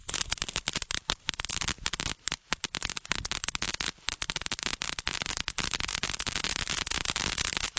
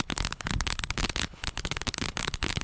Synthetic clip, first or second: second